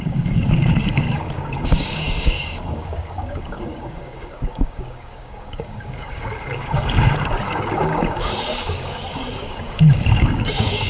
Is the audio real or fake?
fake